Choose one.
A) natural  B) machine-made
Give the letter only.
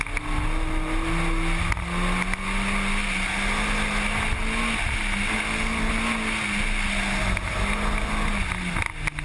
A